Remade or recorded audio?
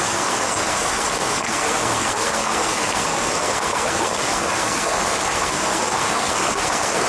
remade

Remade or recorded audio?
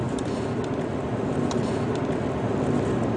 recorded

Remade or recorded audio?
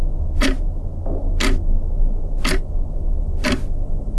recorded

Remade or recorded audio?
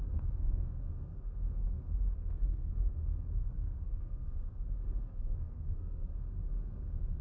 remade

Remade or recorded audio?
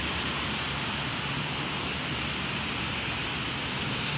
recorded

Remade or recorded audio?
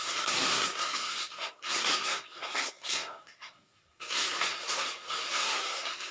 remade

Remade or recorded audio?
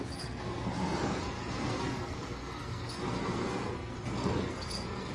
remade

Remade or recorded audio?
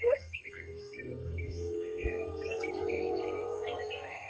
remade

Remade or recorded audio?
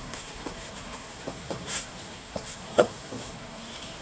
remade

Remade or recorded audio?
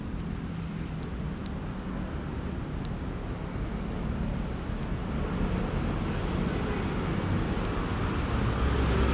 recorded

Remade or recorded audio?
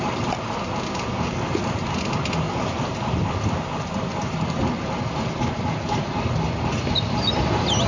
recorded